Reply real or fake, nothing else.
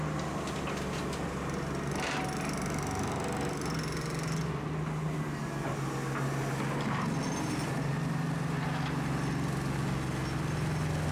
real